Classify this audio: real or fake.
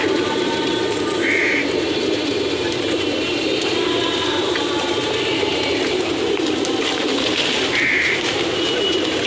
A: fake